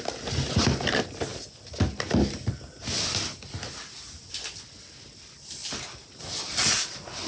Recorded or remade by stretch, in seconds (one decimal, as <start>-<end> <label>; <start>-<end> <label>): 0.0-7.3 recorded